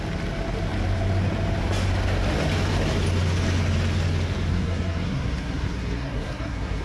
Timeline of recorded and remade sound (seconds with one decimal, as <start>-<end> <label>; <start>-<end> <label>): 0.0-4.5 recorded; 4.5-6.8 remade